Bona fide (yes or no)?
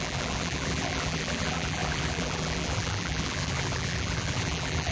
no